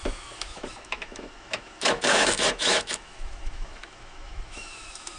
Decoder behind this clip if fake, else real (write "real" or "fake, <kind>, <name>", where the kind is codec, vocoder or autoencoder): fake, autoencoder, DAC-VAE